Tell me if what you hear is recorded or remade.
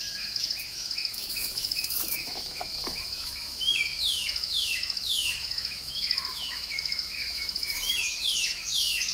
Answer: remade